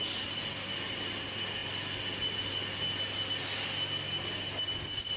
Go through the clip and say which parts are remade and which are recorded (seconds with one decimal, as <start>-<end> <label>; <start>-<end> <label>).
0.0-5.2 recorded